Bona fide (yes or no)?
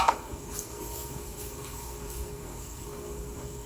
no